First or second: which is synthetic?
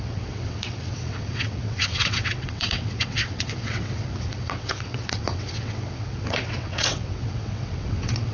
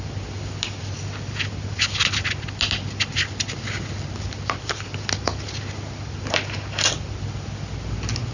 first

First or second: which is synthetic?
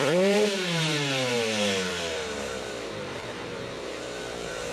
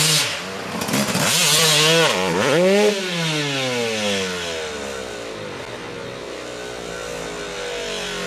first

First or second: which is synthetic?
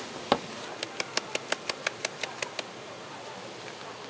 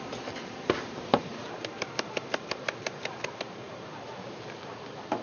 second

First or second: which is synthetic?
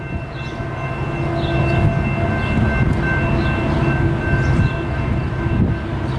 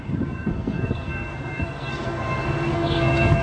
second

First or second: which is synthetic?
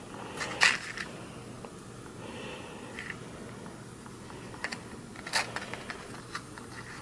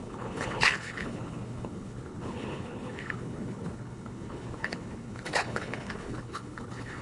second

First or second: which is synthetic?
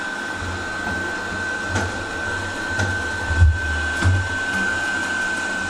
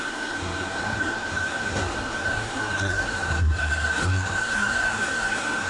second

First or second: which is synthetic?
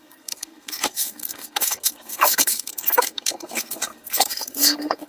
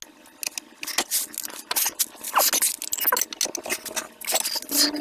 first